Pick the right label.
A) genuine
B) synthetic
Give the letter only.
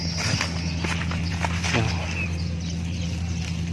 A